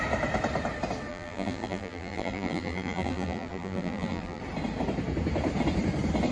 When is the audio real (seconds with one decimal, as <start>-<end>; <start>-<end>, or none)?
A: 0.0-1.1; 4.4-6.3